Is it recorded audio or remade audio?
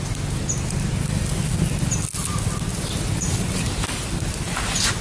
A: recorded